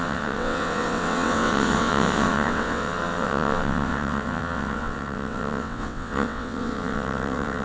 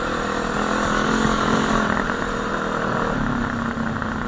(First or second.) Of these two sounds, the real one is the second